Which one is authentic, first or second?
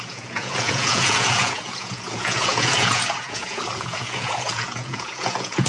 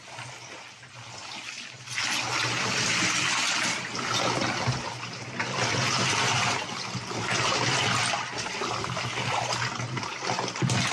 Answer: second